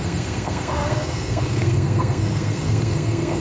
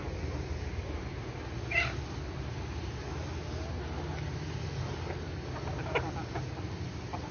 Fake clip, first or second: first